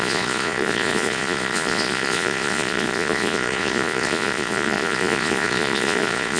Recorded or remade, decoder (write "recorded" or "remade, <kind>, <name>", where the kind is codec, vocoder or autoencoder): remade, vocoder, Vocos